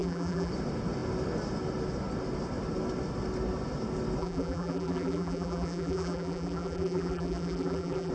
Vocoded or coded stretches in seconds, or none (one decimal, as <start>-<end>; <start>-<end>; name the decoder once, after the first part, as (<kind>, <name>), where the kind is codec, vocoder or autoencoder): 0.0-0.5 (vocoder, BigVGAN v2); 4.2-8.1